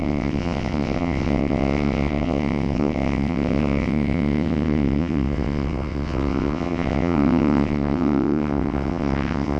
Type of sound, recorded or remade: remade